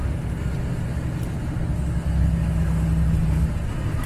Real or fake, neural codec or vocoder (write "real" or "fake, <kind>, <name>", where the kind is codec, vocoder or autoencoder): real